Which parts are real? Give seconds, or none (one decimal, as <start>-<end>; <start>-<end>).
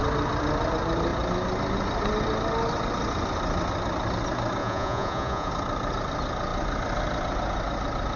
0.0-4.6; 5.5-8.2